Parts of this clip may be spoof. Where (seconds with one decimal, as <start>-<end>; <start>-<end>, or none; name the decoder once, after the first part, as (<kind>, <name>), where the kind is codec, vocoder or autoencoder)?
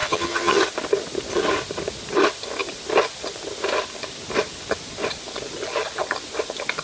0.0-0.6 (vocoder, HiFi-GAN)